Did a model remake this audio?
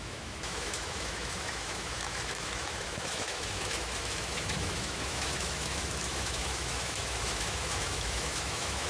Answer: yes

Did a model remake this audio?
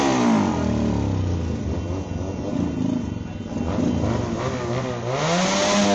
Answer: no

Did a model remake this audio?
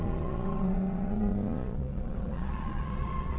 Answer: yes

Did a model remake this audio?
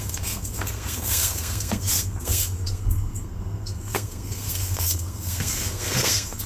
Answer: yes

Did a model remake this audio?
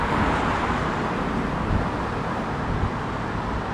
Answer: no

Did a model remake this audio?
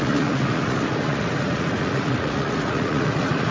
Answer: yes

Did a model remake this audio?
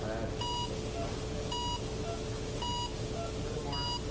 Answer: no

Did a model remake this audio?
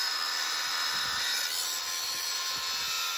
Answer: no